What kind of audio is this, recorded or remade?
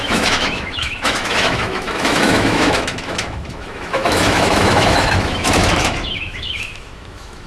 remade